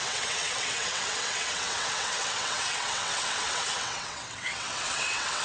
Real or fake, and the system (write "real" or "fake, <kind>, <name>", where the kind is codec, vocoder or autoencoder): fake, vocoder, WaveNeXt